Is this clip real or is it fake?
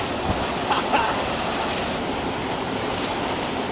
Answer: real